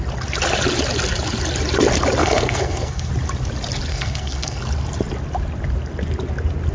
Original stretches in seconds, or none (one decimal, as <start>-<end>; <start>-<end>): 0.0-2.2; 3.1-3.9; 4.6-6.7